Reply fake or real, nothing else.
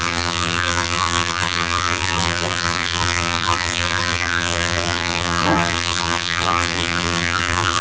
fake